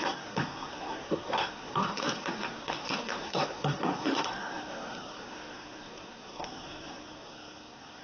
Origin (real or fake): fake